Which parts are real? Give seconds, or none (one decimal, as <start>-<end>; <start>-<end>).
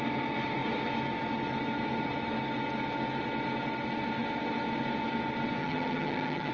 0.0-5.6